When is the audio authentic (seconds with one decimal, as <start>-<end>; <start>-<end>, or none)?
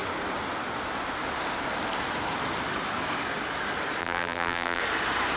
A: 0.0-4.0; 4.8-5.4